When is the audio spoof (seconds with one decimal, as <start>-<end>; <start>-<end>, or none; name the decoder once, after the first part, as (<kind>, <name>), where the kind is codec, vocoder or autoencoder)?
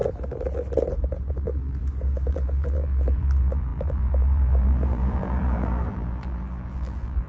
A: 1.3-1.8 (vocoder, BigVGAN v2); 2.3-7.3